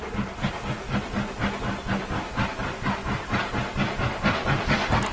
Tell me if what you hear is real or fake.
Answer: real